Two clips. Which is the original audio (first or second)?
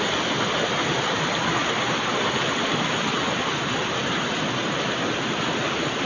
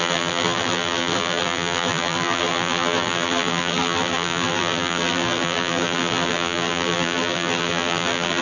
first